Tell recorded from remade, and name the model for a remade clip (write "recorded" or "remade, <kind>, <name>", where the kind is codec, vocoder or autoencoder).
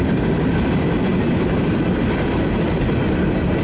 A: recorded